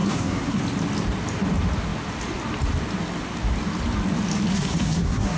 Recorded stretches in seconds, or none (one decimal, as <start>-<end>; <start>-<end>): 0.6-4.5